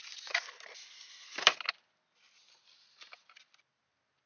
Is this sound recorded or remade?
recorded